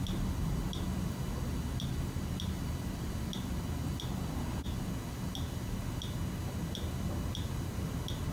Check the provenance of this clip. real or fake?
real